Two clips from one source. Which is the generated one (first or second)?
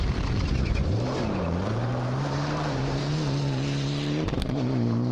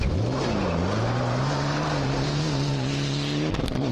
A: first